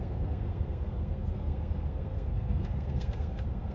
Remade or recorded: remade